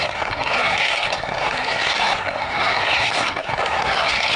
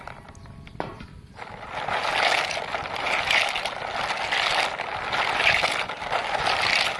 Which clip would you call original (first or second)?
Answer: second